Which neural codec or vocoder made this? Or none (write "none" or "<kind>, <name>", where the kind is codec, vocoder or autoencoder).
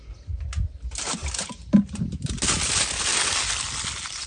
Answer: none